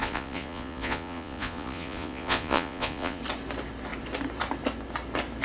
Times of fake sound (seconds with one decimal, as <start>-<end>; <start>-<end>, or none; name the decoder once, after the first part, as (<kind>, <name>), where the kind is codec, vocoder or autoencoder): 0.0-3.2 (vocoder, Vocos)